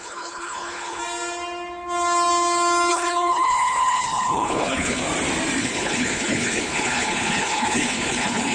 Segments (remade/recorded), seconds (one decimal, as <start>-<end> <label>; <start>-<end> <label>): 0.0-1.0 remade; 1.0-2.9 recorded; 2.9-5.0 remade; 5.0-5.6 recorded; 5.6-8.5 remade